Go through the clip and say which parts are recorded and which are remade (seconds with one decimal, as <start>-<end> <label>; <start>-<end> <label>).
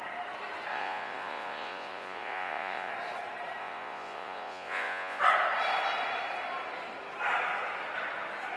0.0-0.7 recorded; 0.7-2.9 remade; 2.9-3.6 recorded; 3.6-5.2 remade; 5.2-8.6 recorded